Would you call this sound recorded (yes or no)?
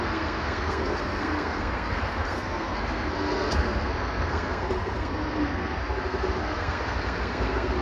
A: no